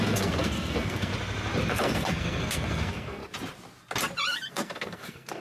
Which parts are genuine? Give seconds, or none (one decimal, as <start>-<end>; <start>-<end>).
1.1-1.7; 3.2-4.5